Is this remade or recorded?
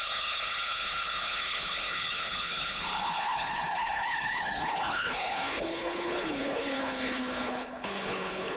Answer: remade